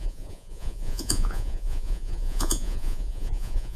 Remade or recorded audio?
remade